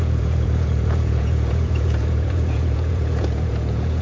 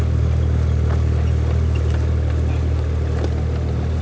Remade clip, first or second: first